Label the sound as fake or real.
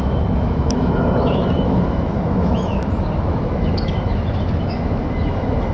fake